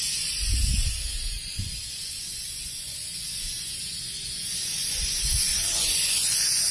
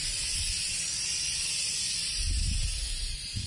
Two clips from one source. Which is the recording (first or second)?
second